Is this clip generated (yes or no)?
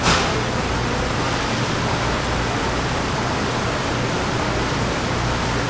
no